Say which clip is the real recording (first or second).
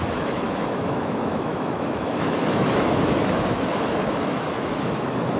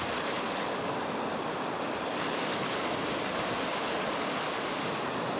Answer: second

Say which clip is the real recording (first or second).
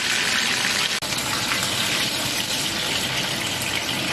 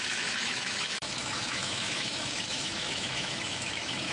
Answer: first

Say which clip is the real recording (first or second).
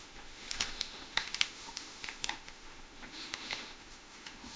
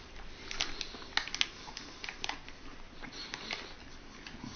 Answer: second